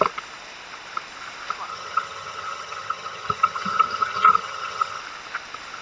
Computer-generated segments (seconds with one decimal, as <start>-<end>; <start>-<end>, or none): 1.7-5.0